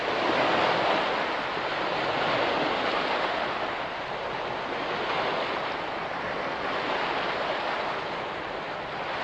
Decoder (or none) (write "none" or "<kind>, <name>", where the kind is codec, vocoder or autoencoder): none